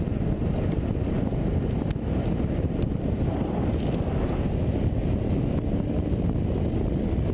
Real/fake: real